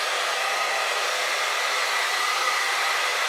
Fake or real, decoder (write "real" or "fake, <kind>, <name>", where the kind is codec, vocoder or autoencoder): real